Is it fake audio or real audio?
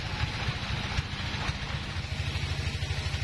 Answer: real